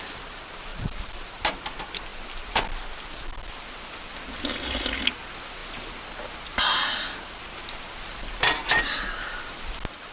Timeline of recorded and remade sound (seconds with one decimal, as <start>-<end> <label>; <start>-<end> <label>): 0.0-0.7 recorded; 0.7-1.6 remade; 1.6-2.1 recorded; 2.1-4.5 remade; 4.5-10.1 recorded